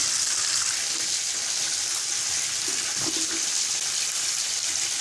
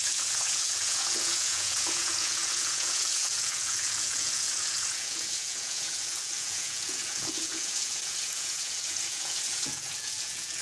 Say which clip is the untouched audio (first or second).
first